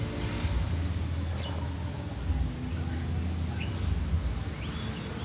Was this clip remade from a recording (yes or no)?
no